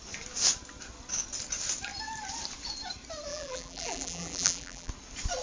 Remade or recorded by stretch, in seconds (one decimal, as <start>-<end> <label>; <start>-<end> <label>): 0.0-3.3 recorded; 3.3-4.9 remade; 4.9-5.4 recorded